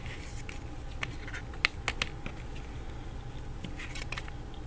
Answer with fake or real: real